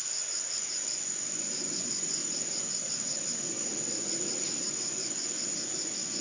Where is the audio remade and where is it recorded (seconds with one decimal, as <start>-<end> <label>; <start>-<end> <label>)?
0.0-3.7 remade; 3.7-4.6 recorded; 4.6-6.2 remade